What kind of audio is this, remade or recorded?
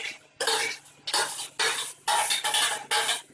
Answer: recorded